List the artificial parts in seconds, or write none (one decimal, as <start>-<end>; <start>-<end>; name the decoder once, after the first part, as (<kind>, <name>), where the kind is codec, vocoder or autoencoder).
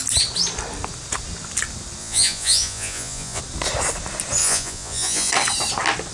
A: 2.0-3.4 (vocoder, Vocos); 4.4-5.3